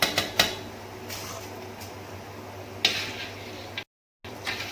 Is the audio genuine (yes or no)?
yes